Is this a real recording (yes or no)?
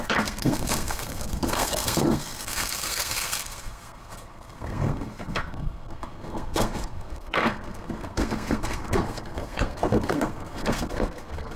no